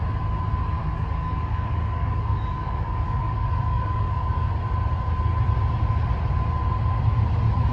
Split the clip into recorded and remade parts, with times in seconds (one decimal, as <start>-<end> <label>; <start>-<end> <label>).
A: 0.0-0.8 recorded; 0.8-4.5 remade; 4.5-7.7 recorded